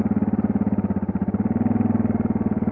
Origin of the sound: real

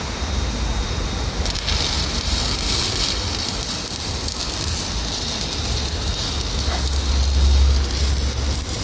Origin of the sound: real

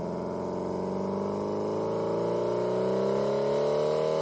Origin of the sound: real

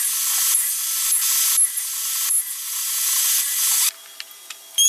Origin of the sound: real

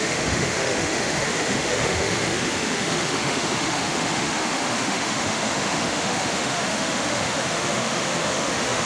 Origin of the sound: fake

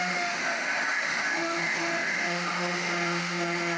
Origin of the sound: fake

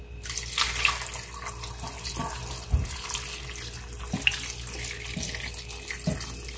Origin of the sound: real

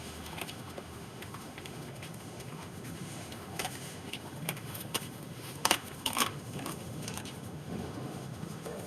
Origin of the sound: fake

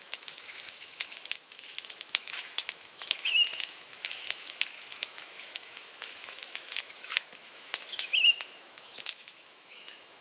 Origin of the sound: fake